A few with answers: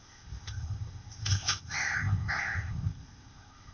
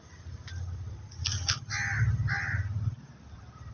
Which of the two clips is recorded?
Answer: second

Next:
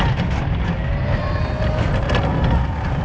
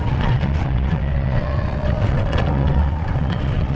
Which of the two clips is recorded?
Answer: first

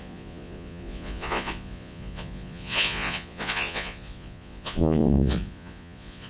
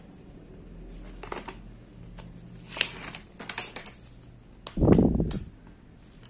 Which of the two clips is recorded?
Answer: second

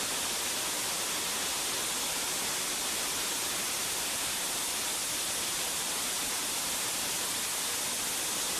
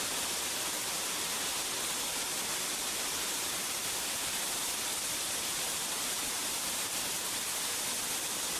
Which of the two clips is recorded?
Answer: first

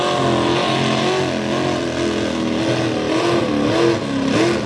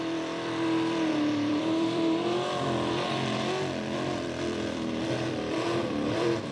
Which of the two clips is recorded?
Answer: first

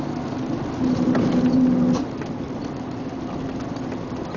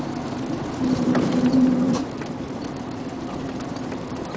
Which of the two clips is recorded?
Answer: first